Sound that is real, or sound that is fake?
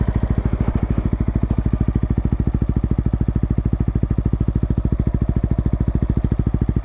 real